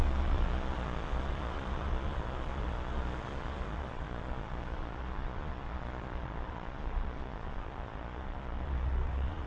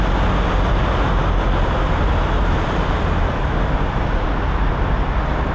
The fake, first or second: first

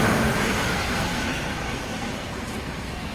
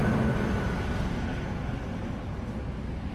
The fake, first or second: first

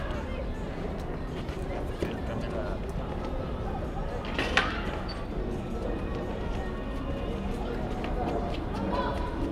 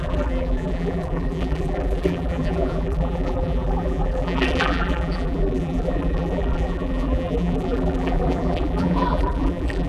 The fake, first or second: second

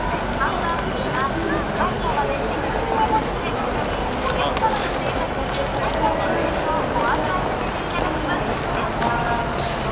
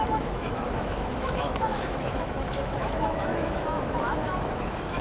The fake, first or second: second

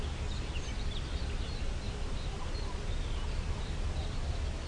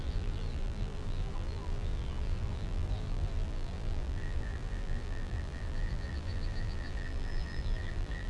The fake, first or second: second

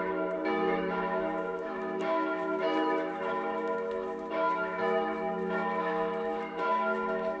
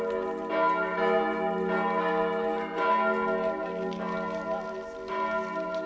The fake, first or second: first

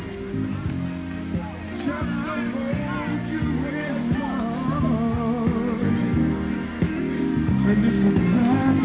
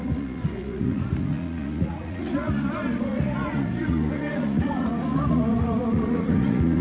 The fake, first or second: second